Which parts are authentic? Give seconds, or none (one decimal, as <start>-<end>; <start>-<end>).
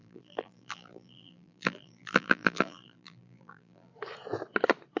3.9-5.0